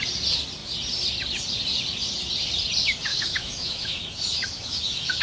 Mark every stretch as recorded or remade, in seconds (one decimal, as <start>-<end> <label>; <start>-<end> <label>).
0.0-3.1 recorded; 3.1-5.2 remade